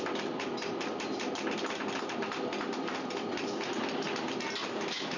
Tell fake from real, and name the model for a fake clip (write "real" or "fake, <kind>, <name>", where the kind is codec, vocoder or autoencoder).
real